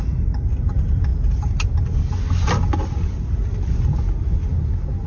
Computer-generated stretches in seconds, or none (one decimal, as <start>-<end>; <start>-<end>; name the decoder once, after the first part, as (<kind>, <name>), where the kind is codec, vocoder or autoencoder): none